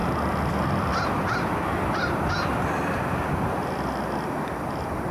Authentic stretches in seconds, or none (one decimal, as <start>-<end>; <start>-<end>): 0.0-5.1